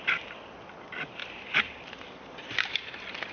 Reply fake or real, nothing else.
real